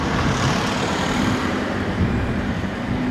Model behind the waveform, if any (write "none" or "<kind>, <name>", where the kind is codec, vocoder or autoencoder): vocoder, BigVGAN v2